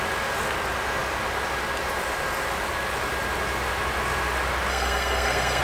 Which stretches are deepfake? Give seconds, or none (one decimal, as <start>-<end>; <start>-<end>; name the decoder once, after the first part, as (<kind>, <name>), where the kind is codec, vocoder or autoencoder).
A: 4.7-5.6 (codec, SNAC)